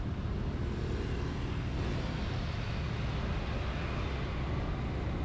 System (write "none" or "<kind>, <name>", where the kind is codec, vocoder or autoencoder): none